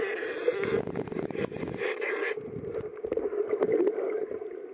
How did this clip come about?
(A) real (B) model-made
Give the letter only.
A